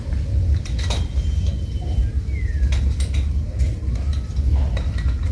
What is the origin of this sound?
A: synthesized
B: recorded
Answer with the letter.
B